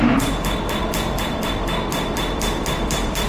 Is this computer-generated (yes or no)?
yes